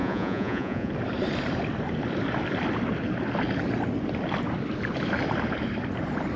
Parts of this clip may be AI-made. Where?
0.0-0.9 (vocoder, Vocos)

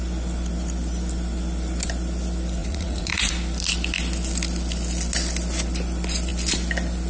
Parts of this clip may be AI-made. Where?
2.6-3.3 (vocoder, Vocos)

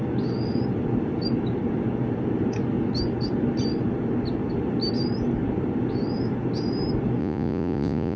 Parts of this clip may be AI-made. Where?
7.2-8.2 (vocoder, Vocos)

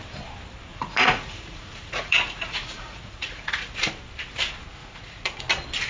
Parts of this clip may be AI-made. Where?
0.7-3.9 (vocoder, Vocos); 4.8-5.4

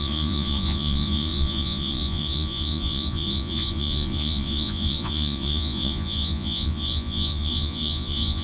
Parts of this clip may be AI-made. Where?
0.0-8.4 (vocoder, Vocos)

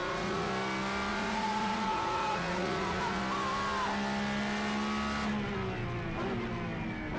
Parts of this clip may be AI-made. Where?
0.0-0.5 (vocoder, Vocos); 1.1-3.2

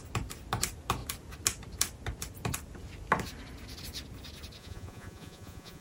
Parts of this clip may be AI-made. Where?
4.6-5.8 (vocoder, Vocos)

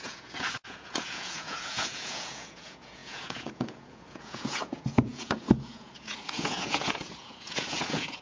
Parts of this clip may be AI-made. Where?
0.0-8.2 (vocoder, Vocos)